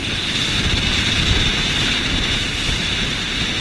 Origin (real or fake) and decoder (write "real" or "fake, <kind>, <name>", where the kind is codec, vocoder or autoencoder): fake, vocoder, BigVGAN v2